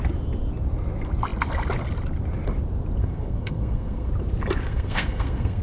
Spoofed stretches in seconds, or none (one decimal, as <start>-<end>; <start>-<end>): 3.0-4.1; 4.6-5.6